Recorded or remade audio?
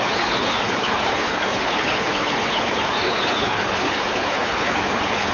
remade